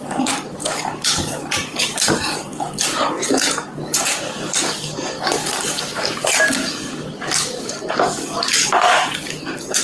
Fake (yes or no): yes